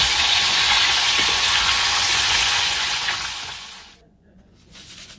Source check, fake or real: fake